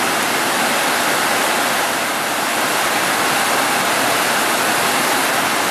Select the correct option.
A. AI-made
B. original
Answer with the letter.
B